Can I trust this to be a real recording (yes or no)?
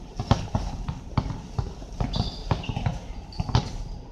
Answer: yes